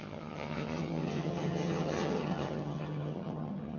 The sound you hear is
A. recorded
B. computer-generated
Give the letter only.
B